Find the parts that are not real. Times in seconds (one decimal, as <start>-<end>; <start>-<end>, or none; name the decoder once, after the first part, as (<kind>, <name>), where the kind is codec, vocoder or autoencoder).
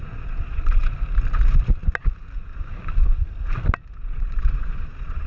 0.0-0.8 (vocoder, Vocos); 4.0-5.3